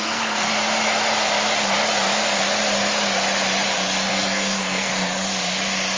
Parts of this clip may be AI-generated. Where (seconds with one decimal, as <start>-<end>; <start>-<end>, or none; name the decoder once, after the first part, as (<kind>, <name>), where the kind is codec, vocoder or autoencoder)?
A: 0.0-0.5 (codec, SNAC); 4.1-4.9